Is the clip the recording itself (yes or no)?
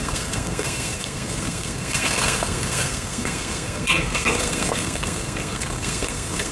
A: no